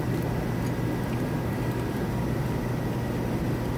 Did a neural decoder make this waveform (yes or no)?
no